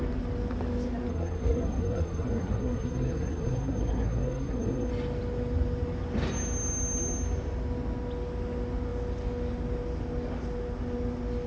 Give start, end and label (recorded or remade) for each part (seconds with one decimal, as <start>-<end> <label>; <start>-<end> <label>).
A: 0.0-1.1 recorded; 1.1-4.9 remade; 4.9-11.5 recorded